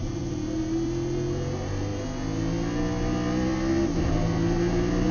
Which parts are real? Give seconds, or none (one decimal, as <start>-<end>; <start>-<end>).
1.9-5.1